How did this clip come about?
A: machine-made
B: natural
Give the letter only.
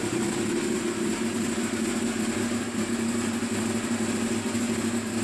B